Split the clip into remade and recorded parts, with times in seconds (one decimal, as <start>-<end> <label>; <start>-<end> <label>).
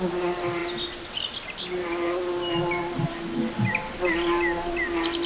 0.0-5.3 recorded